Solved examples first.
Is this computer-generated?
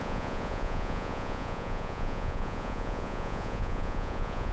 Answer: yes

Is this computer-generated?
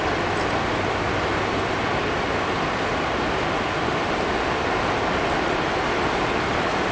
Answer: no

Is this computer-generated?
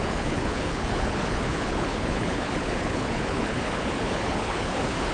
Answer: yes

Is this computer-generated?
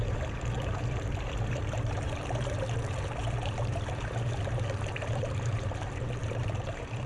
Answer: yes